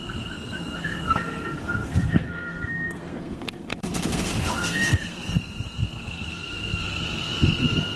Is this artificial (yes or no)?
yes